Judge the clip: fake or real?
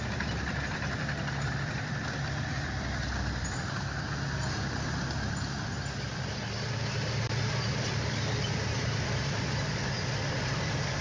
fake